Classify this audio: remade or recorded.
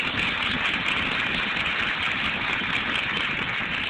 recorded